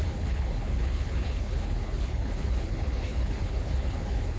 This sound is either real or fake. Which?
fake